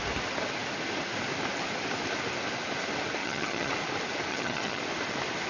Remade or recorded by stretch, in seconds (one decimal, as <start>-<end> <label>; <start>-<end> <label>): 0.0-3.2 recorded; 3.2-3.7 remade; 3.7-4.3 recorded; 4.3-4.8 remade; 4.8-5.5 recorded